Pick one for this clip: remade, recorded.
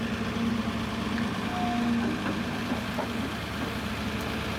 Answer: recorded